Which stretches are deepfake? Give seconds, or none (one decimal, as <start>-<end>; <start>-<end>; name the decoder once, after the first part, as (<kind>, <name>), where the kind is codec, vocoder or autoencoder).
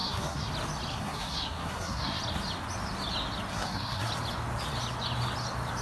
0.0-0.5 (codec, SNAC); 0.9-2.2; 3.5-4.1